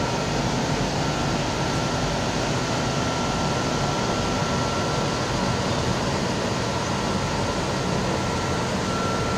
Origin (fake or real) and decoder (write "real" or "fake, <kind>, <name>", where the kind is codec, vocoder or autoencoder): real